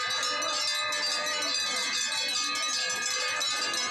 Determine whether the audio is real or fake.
real